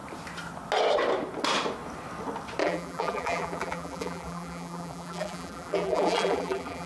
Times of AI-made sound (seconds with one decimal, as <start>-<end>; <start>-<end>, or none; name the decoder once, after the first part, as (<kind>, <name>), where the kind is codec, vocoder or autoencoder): 2.6-6.9 (vocoder, BigVGAN v2)